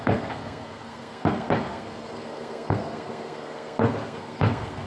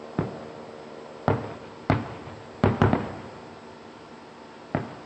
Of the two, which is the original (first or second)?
second